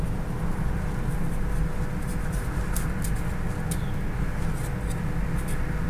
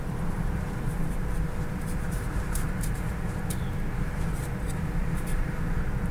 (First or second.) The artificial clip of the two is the second